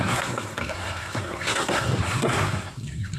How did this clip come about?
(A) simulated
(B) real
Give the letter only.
A